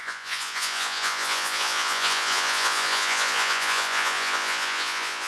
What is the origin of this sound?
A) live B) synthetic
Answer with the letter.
B